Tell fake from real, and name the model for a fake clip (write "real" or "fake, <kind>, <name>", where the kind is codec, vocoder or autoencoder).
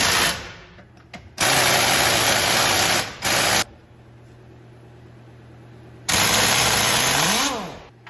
real